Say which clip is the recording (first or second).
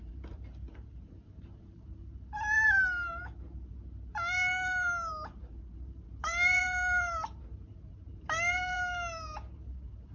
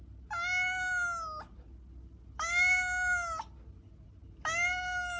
second